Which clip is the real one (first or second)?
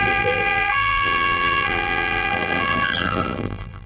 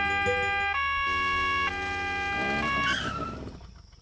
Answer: second